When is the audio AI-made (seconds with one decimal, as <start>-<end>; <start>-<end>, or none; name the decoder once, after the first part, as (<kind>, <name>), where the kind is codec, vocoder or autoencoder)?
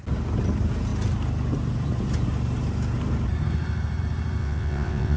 4.4-5.2 (vocoder, WaveNeXt)